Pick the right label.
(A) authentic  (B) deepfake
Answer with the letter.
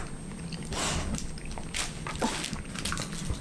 A